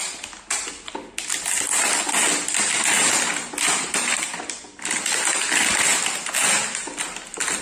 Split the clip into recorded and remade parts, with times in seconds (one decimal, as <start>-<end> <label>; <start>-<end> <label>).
0.0-7.6 recorded